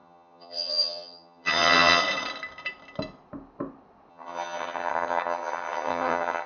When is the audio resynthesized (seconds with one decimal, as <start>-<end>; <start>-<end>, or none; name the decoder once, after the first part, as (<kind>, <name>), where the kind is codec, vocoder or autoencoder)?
0.0-2.0 (vocoder, HiFi-GAN); 4.1-6.5

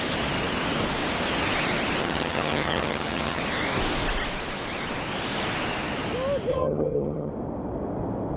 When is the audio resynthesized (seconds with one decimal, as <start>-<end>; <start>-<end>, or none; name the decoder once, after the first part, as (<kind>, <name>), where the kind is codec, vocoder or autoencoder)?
2.0-3.4 (vocoder, HiFi-GAN); 6.5-7.3

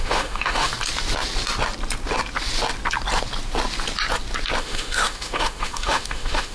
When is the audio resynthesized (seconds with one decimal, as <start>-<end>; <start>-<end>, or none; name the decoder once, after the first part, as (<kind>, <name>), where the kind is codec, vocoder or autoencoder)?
0.0-0.7 (autoencoder, DAC-VAE); 4.6-6.5

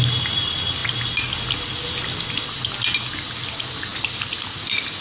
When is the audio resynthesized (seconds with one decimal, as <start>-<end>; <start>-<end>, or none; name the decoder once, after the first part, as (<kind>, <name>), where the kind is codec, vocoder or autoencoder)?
none

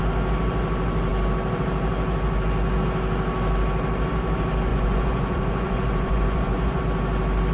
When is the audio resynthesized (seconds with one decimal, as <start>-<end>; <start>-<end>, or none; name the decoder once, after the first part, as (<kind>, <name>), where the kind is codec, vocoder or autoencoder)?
4.7-6.8 (vocoder, Vocos)

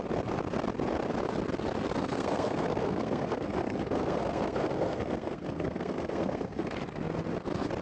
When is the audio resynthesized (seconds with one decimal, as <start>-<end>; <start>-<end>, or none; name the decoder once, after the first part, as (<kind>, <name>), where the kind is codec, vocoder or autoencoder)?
2.0-6.7 (codec, SNAC)